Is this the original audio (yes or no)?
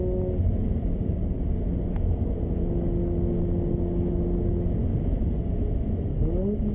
yes